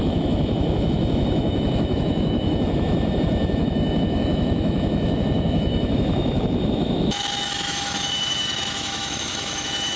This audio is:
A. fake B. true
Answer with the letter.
A